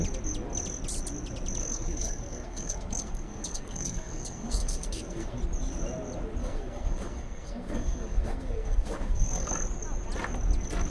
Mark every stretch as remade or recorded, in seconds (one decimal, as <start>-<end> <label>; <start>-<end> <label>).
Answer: 0.0-1.6 recorded; 1.6-5.4 remade; 5.4-6.4 recorded; 6.4-9.5 remade; 9.5-10.9 recorded